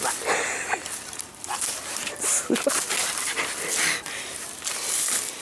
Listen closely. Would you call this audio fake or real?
real